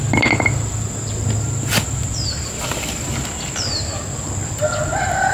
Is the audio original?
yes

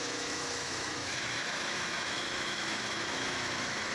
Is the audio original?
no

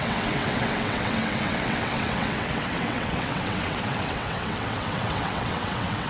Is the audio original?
no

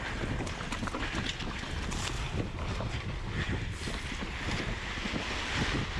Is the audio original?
yes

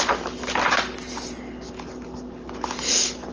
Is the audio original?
yes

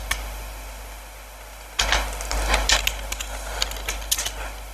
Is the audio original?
yes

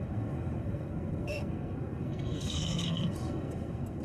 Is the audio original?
no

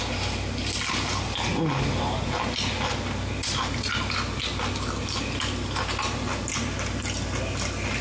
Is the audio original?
yes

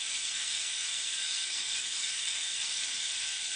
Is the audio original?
no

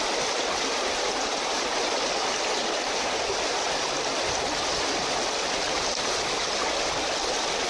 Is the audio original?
yes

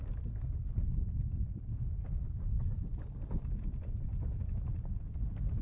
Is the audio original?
yes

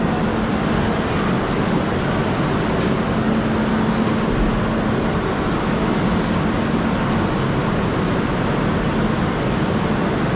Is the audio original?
yes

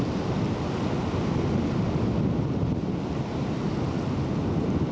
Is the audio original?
yes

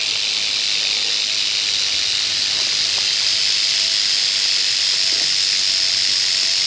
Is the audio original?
yes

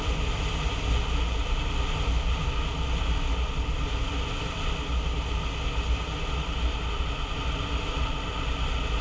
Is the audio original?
yes